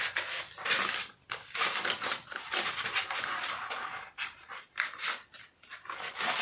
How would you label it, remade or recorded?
recorded